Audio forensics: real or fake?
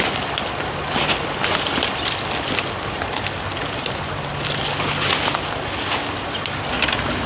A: real